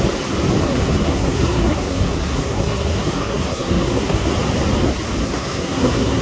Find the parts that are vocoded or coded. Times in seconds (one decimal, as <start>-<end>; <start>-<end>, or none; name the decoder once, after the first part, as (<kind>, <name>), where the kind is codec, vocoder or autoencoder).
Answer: 0.6-4.3 (codec, SNAC); 5.2-6.2